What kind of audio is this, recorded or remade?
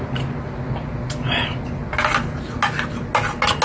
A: recorded